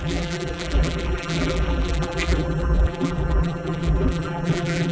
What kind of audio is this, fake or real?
fake